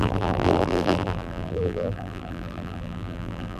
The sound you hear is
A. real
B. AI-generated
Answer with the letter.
B